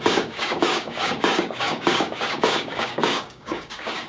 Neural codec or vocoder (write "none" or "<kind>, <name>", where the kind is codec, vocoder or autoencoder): codec, DAC